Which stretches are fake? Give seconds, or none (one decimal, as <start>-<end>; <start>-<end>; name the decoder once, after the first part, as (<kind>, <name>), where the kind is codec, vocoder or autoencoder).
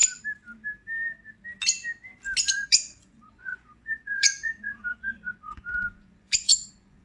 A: 2.5-7.0 (vocoder, Vocos)